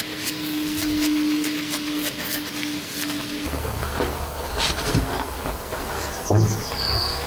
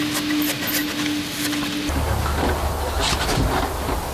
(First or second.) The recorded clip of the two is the second